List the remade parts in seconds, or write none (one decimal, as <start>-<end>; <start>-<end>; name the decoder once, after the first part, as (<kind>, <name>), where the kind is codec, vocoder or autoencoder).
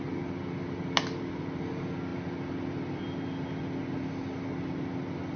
none